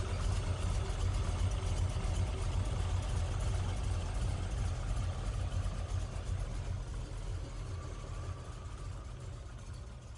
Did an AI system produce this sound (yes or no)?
no